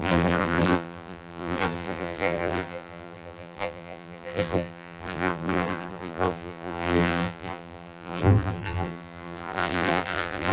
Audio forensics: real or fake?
fake